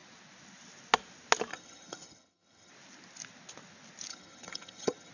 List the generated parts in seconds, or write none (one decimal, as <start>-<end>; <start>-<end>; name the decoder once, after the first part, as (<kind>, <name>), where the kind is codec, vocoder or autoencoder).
1.5-2.7 (vocoder, HiFi-GAN); 4.1-5.1